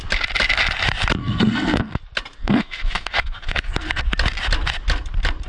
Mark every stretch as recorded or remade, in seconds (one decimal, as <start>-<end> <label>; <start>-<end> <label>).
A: 0.0-1.2 recorded; 1.2-2.0 remade; 2.0-2.4 recorded; 2.4-4.0 remade; 4.0-5.5 recorded